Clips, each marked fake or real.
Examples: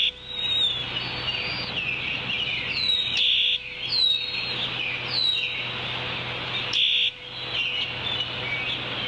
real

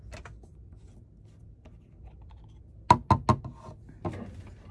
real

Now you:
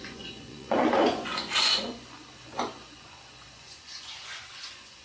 fake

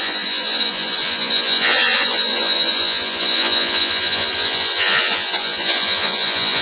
fake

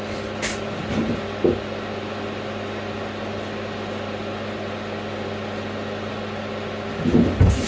real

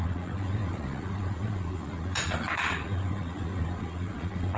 fake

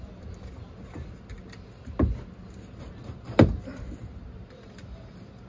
real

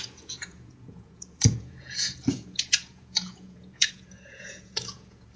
fake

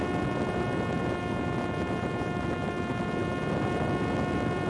real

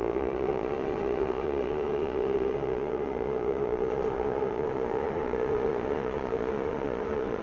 fake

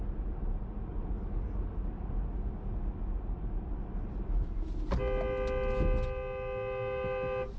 real